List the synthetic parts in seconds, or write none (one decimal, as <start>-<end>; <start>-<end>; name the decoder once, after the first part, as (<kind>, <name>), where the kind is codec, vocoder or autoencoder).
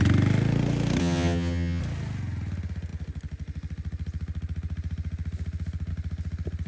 1.0-1.8 (vocoder, HiFi-GAN)